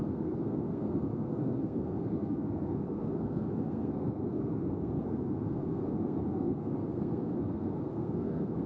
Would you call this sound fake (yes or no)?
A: yes